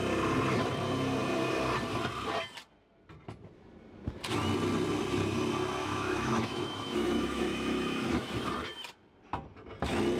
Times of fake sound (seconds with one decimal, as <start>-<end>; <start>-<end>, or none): 5.8-8.3